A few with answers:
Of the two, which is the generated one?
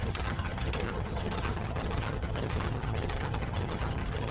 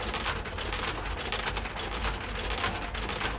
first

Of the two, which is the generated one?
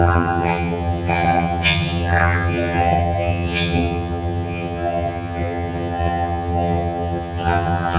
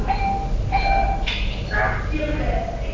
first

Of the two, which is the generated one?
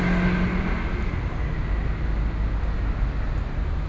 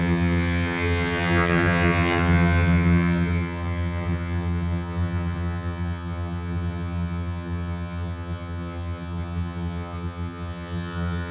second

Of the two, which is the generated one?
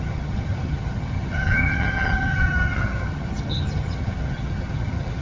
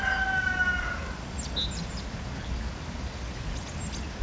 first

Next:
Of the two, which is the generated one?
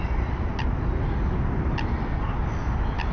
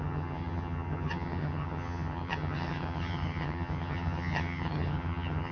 second